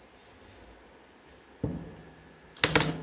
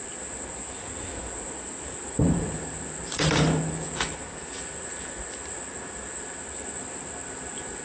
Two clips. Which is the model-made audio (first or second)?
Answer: second